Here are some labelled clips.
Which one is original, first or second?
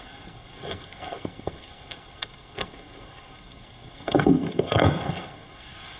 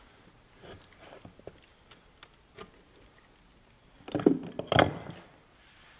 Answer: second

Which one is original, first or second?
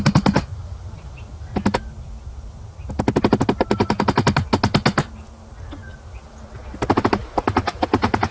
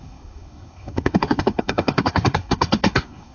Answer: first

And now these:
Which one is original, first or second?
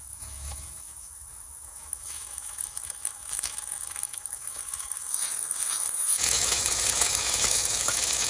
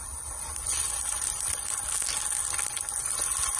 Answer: second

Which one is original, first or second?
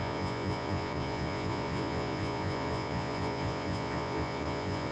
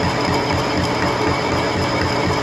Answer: second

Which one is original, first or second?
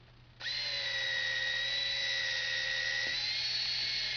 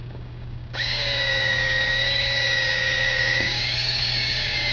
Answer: first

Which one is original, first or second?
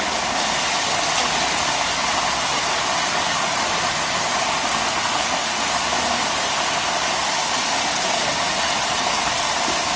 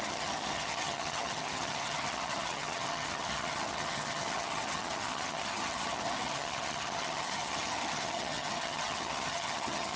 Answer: first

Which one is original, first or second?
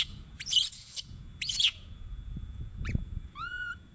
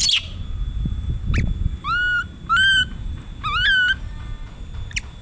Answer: second